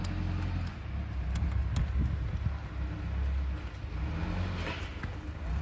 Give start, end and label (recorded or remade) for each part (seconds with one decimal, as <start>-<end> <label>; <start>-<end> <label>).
0.0-5.6 recorded